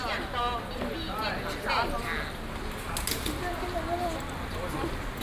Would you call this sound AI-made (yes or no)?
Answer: no